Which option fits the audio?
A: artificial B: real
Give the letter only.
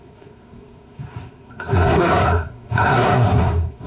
A